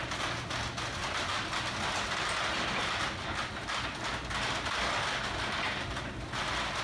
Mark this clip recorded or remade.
recorded